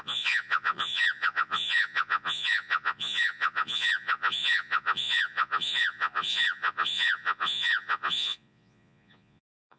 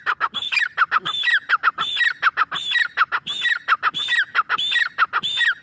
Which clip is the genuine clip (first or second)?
second